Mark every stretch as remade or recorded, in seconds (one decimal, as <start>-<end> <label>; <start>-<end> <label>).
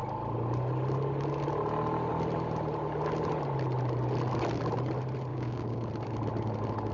0.0-5.3 recorded; 5.3-5.9 remade; 5.9-6.9 recorded